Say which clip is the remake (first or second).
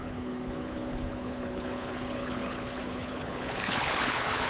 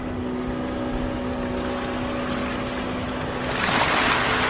first